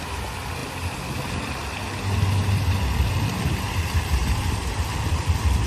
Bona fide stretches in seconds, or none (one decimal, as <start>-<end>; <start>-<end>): 0.0-4.2